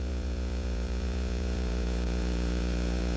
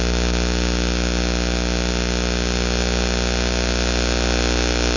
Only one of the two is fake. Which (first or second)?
first